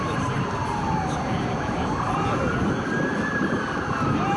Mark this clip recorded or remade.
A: recorded